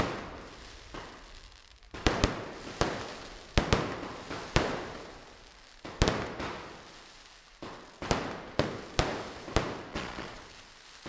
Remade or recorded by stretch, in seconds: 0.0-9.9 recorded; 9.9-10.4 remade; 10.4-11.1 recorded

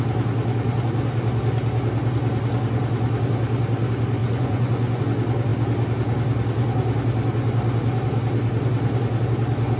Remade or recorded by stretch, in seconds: 0.0-4.2 recorded; 4.2-5.0 remade; 5.0-9.8 recorded

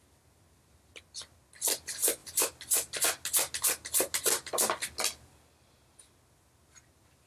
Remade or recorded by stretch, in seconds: 0.0-7.3 recorded

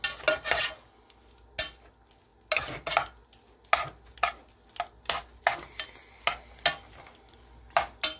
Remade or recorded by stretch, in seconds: 0.0-8.2 recorded

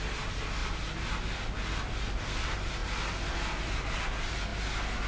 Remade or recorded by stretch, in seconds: 0.0-5.1 recorded